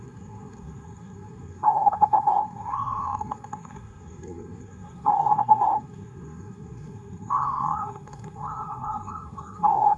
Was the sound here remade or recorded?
remade